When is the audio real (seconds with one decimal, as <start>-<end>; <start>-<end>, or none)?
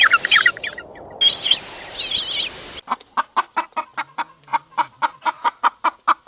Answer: 0.0-6.3